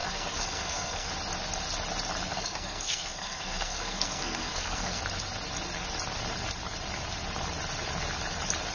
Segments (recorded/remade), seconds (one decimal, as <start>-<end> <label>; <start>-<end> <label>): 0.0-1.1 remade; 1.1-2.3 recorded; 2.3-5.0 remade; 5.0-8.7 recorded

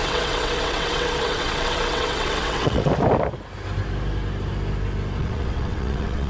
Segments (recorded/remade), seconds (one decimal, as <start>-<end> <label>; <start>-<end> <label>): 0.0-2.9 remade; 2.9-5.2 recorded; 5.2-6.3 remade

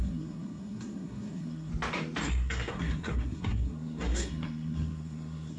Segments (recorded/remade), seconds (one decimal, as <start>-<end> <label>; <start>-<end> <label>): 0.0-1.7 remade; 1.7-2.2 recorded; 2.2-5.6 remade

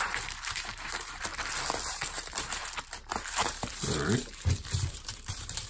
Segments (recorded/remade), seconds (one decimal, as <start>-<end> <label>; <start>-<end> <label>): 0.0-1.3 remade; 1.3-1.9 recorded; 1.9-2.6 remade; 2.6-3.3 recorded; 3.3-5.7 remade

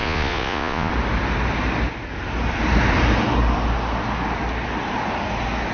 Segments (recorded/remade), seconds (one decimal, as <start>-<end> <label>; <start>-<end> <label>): 0.0-0.9 remade; 0.9-5.7 recorded

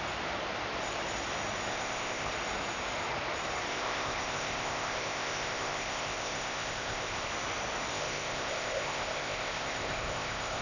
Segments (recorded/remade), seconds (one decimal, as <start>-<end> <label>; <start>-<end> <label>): 0.0-1.7 recorded; 1.7-2.3 remade; 2.3-3.7 recorded; 3.7-7.3 remade; 7.3-7.9 recorded; 7.9-10.6 remade

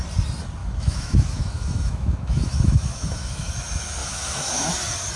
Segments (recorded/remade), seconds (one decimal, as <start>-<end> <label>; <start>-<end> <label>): 0.0-0.6 recorded; 0.6-3.5 remade; 3.5-4.0 recorded; 4.0-4.7 remade; 4.7-5.2 recorded